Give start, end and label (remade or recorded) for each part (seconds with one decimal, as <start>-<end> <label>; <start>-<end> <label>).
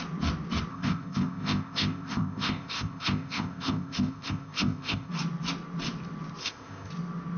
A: 0.0-0.7 recorded; 0.7-5.1 remade; 5.1-6.4 recorded; 6.4-6.9 remade; 6.9-7.4 recorded